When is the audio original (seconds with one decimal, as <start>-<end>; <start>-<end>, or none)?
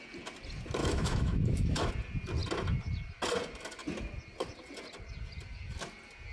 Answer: 0.0-0.8; 1.9-6.3